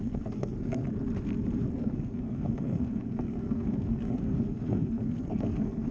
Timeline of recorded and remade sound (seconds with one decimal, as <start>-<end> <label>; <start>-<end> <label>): 0.0-0.8 remade; 0.8-1.7 recorded; 1.7-5.9 remade